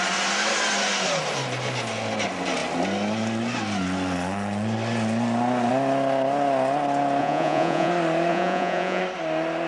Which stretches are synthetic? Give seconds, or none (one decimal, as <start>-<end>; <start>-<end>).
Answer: 7.2-7.9; 8.3-9.0